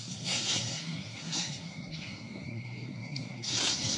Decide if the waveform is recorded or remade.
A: remade